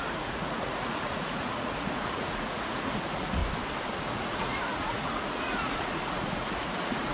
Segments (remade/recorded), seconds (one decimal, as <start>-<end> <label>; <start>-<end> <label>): 0.0-3.4 remade; 3.4-4.1 recorded; 4.1-7.1 remade